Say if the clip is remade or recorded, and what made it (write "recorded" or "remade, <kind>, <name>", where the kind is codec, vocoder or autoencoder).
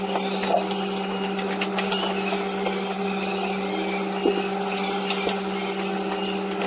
recorded